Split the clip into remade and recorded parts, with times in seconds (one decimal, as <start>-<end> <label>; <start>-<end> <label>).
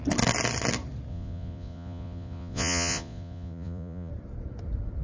0.0-1.1 recorded; 1.1-4.1 remade; 4.1-5.0 recorded